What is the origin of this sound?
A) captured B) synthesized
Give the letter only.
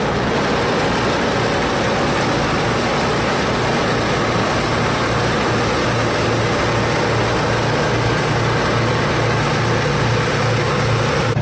A